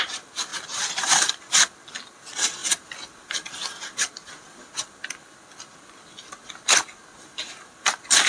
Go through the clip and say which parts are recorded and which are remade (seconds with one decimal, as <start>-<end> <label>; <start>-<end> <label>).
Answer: 0.0-8.3 recorded